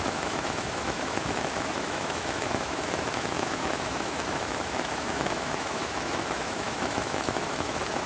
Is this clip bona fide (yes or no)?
no